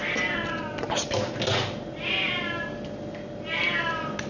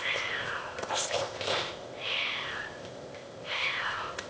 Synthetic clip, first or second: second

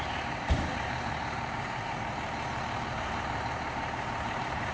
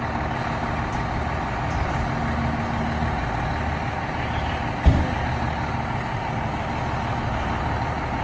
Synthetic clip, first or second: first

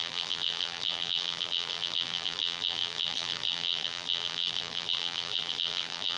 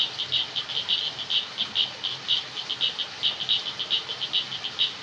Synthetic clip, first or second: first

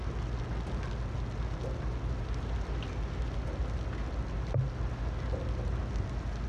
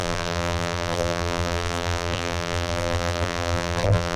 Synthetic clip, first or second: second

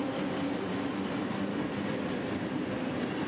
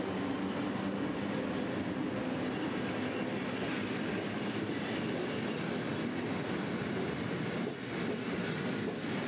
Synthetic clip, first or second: first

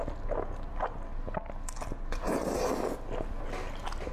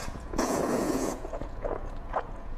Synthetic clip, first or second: second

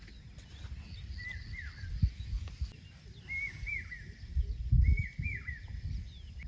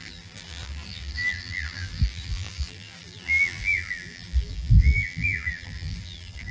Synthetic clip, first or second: second